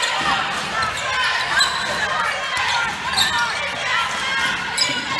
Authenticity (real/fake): real